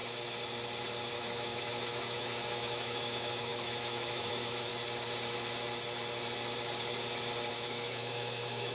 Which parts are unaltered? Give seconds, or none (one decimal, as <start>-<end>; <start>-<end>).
0.0-1.1; 4.7-7.5